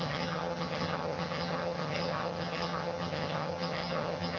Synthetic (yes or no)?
yes